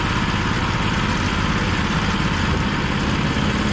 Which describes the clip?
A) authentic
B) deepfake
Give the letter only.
A